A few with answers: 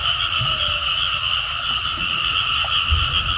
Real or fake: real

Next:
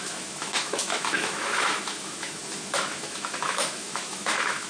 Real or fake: fake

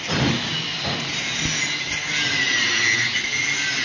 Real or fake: real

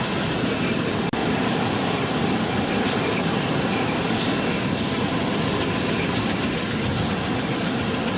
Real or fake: real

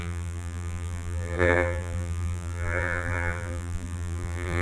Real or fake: fake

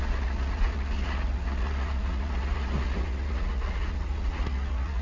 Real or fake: fake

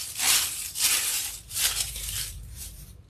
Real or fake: fake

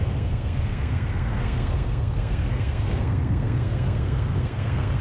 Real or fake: fake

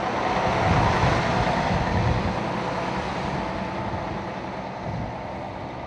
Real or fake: real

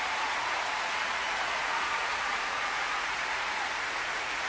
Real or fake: fake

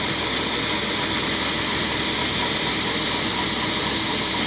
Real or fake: real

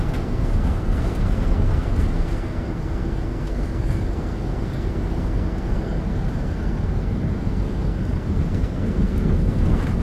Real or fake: fake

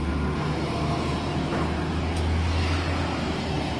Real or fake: real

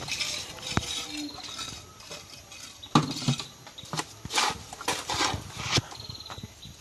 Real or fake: real